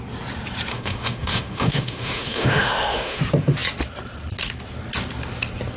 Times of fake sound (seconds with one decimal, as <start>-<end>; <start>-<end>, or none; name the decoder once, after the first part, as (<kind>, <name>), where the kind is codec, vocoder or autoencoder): 0.7-3.2 (autoencoder, DAC-VAE)